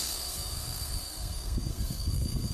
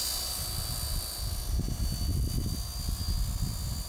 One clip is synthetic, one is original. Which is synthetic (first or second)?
first